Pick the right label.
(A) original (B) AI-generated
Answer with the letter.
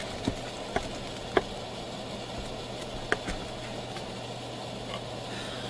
A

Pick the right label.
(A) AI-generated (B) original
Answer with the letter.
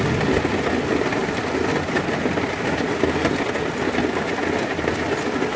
B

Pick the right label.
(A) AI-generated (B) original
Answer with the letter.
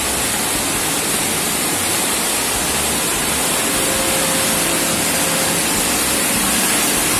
B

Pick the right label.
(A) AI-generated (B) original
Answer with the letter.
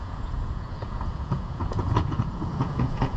A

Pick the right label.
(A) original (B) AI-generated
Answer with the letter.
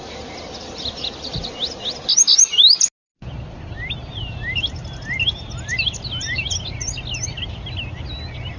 A